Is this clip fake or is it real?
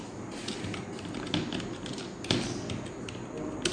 real